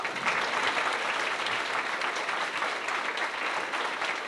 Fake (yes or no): no